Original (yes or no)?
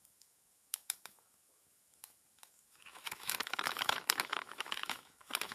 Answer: no